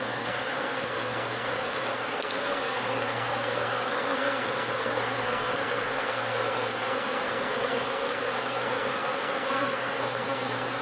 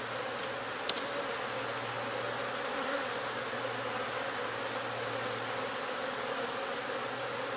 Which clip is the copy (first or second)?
first